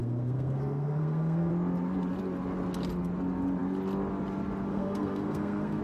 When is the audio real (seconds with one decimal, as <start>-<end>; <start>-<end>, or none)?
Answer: 1.5-4.7